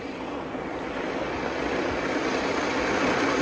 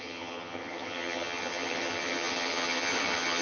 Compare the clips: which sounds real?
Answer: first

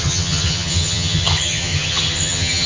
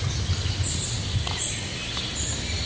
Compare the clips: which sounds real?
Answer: second